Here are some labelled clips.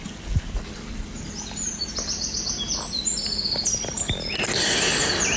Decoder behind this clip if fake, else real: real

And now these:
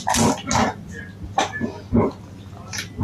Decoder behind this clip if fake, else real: real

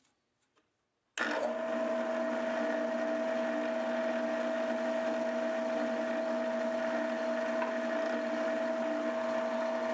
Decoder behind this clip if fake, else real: real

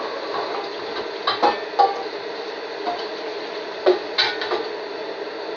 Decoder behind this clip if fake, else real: real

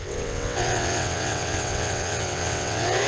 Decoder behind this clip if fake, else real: fake, vocoder, WaveNeXt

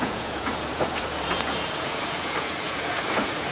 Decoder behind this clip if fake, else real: fake, vocoder, Vocos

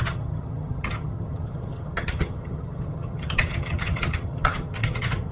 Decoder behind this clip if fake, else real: fake, vocoder, HiFi-GAN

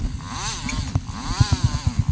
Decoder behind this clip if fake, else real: real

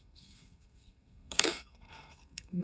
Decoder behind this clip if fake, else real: fake, codec, SNAC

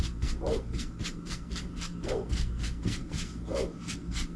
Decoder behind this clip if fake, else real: fake, codec, SNAC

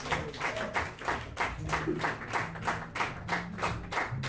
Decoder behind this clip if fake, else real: real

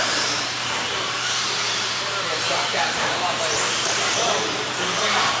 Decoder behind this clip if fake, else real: fake, vocoder, BigVGAN v2